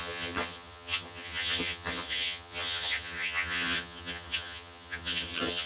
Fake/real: fake